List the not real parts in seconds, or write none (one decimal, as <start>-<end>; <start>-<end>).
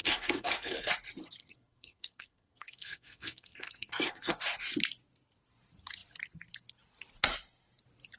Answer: 0.0-0.9; 1.4-4.4